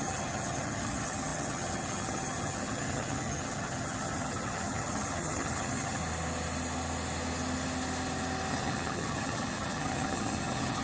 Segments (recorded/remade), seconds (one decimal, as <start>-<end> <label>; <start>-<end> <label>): 0.0-6.0 remade; 6.0-8.5 recorded; 8.5-10.8 remade